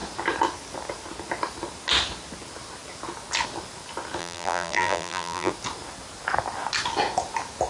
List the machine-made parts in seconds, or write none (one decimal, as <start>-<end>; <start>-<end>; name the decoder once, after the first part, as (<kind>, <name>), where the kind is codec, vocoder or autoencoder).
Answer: 4.2-5.5 (vocoder, BigVGAN v2)